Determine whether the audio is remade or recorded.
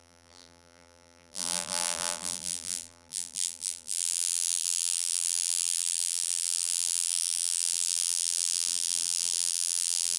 remade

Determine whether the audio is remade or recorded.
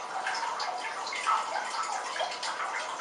recorded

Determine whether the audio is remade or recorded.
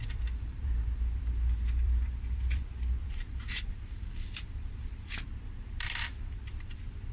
remade